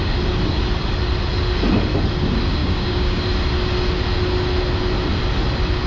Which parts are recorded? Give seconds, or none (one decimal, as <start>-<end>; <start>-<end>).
0.0-2.6; 3.2-5.9